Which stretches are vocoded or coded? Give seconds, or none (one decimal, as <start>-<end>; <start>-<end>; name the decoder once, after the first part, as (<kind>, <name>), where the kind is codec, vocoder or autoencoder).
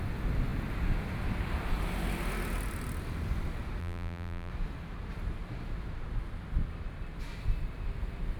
3.8-4.5 (vocoder, BigVGAN v2)